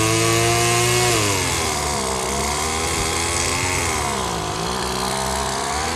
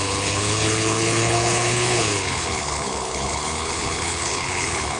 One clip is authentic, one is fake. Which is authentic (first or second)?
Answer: first